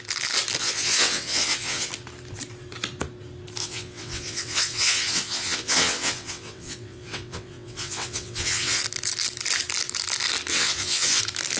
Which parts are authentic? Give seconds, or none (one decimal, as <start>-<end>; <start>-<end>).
0.0-0.6; 1.9-3.6; 8.8-10.5; 11.2-11.6